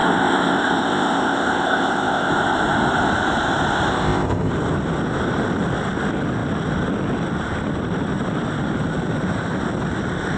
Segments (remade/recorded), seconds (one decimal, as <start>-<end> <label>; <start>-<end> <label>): 0.0-2.3 remade; 2.3-3.9 recorded; 3.9-4.5 remade; 4.5-10.4 recorded